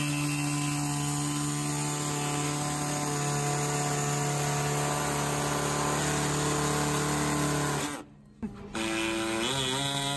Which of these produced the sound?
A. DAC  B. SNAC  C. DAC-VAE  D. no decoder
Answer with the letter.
D